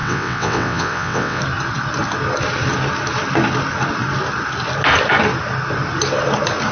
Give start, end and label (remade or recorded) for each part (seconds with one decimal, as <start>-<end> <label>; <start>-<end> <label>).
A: 0.0-1.4 remade; 1.4-6.7 recorded